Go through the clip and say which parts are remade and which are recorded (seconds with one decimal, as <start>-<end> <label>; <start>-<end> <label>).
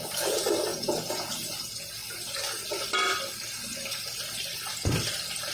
0.0-0.7 recorded; 0.7-1.3 remade; 1.3-5.5 recorded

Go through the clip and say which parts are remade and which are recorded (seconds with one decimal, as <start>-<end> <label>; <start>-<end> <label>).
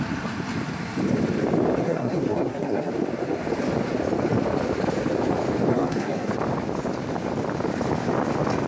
0.0-1.8 recorded; 1.8-2.9 remade; 2.9-5.7 recorded; 5.7-6.3 remade; 6.3-8.7 recorded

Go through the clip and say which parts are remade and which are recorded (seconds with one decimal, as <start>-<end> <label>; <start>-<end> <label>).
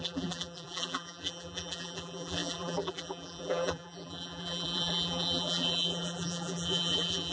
0.0-7.3 remade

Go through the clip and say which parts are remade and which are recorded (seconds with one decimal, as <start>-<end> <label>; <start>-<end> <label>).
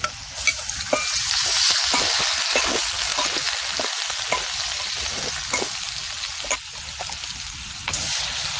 0.0-8.6 recorded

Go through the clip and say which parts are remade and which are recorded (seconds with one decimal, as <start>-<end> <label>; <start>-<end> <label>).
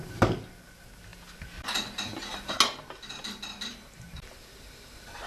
0.0-5.3 recorded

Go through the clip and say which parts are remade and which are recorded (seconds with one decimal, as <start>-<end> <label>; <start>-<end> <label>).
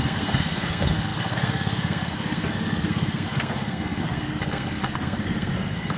0.0-6.0 remade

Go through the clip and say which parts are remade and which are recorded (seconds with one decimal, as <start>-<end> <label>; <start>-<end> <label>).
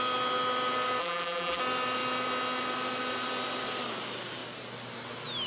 0.0-1.0 recorded; 1.0-1.6 remade; 1.6-5.5 recorded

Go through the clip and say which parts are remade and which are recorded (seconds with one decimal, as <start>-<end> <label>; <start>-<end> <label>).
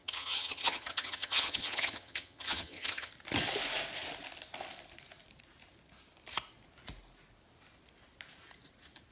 0.0-3.1 remade; 3.1-9.1 recorded